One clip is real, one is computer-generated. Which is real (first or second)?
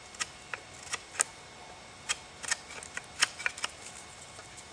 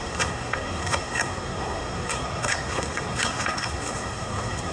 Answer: first